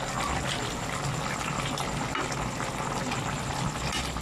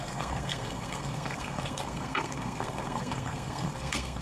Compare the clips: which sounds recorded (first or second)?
first